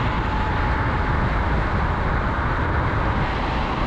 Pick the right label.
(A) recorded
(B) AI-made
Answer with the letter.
A